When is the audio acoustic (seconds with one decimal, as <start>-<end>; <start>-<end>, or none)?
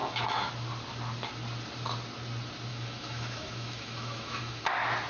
0.5-2.7; 4.6-5.1